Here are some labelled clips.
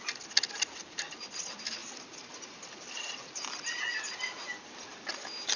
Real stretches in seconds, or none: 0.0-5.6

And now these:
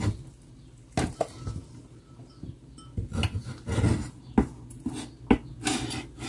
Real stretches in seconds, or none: 0.0-6.3

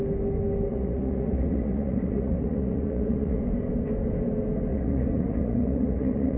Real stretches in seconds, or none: 0.0-0.7; 3.4-4.7